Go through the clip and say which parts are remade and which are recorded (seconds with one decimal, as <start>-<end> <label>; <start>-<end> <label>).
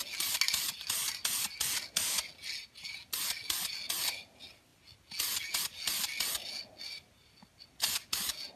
0.0-8.6 recorded